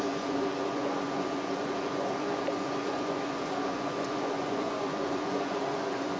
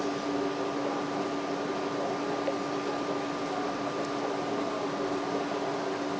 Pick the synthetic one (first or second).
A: first